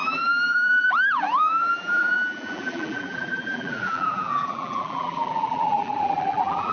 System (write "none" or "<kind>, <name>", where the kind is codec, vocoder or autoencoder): vocoder, BigVGAN v2